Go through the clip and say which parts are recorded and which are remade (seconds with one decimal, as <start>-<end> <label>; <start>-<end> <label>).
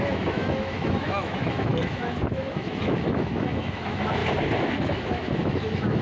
0.0-4.2 remade; 4.2-4.7 recorded; 4.7-6.0 remade